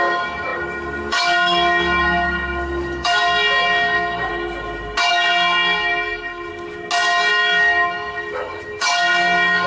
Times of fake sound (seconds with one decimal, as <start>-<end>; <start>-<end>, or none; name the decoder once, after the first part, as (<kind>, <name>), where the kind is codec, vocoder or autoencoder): 0.0-4.3 (codec, DAC); 5.1-6.5; 7.3-9.7